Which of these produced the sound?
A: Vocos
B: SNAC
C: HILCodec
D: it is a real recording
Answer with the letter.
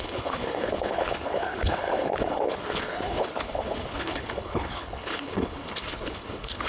C